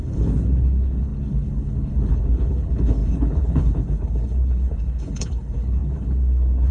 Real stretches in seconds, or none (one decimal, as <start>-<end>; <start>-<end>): none

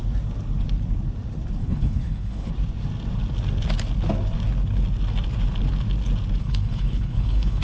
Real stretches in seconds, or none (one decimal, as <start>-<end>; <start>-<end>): 0.0-1.6; 2.5-6.4